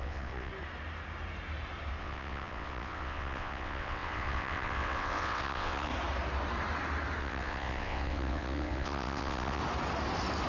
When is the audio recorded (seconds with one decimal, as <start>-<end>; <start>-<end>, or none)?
0.5-2.0; 5.9-7.2; 9.6-10.5